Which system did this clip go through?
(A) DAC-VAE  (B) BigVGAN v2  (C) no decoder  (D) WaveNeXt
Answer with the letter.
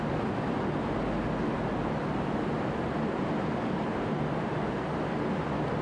C